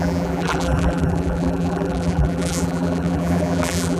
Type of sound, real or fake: fake